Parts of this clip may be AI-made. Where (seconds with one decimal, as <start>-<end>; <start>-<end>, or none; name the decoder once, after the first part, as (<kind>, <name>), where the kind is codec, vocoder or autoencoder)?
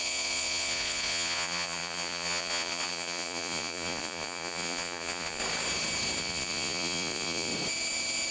0.0-5.4 (vocoder, Vocos); 6.2-7.5